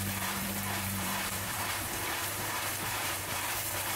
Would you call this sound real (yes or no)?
no